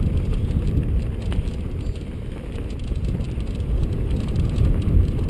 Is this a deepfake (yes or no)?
no